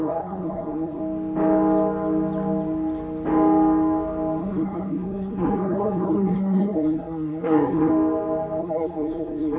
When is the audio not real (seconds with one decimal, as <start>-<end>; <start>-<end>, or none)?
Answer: 0.0-1.0; 4.4-7.9; 8.6-9.6